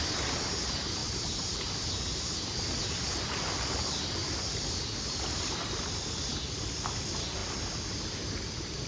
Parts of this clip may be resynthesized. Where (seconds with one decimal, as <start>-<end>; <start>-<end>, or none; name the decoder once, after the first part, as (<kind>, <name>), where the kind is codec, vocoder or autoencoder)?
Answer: 1.0-2.6 (vocoder, BigVGAN v2)